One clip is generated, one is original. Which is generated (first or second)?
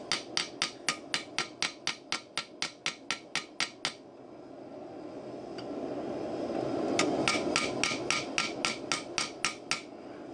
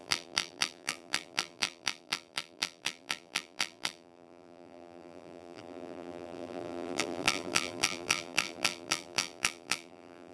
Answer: second